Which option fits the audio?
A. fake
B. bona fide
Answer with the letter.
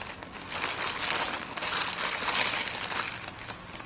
B